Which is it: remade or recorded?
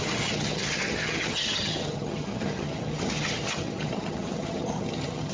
remade